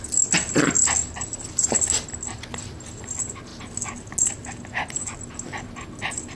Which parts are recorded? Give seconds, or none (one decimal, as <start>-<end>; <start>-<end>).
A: 0.0-6.3